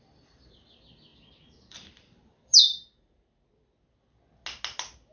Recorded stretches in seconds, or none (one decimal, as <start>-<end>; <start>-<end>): 0.0-5.1